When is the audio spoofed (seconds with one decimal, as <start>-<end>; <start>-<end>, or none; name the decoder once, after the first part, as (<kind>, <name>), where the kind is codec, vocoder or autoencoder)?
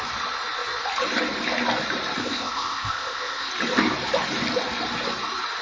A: 2.2-3.5 (codec, ZipCodec)